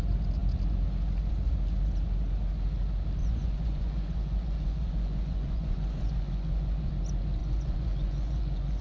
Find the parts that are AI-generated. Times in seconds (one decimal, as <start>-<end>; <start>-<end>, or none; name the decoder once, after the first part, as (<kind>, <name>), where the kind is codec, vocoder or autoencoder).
3.2-6.9 (vocoder, Vocos); 7.4-8.8